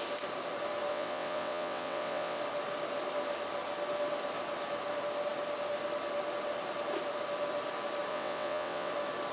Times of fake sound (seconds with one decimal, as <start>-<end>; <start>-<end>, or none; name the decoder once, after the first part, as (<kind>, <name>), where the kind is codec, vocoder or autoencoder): 0.9-2.4 (vocoder, WaveNeXt); 8.1-8.9